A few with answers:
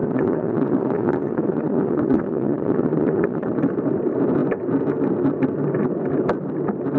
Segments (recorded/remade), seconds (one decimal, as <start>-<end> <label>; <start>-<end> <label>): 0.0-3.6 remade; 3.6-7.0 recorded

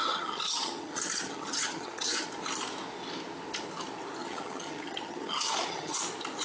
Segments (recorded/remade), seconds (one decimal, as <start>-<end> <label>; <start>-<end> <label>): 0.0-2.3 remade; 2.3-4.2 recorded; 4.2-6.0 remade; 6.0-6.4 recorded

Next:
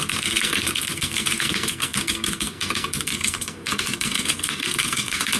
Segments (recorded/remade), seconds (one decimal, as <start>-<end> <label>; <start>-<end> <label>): 0.0-5.4 remade

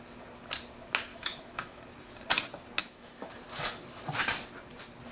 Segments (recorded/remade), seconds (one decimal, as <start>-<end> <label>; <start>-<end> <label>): 0.0-1.1 recorded; 1.1-1.8 remade; 1.8-2.8 recorded; 2.8-3.3 remade; 3.3-5.1 recorded

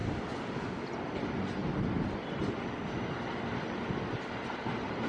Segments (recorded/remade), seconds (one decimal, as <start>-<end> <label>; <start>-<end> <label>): 0.0-5.1 recorded

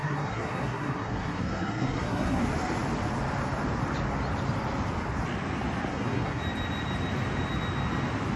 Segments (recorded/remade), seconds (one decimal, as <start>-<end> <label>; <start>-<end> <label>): 0.0-2.4 remade; 2.4-5.9 recorded; 5.9-6.4 remade; 6.4-8.4 recorded

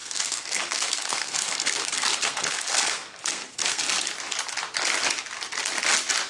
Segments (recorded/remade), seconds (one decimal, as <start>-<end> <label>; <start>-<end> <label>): 0.0-3.8 remade; 3.8-6.3 recorded

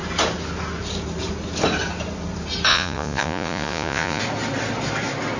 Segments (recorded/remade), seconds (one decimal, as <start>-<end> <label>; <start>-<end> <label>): 0.0-2.7 recorded; 2.7-4.2 remade; 4.2-5.4 recorded